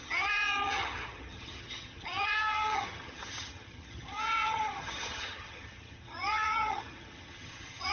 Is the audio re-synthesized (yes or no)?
yes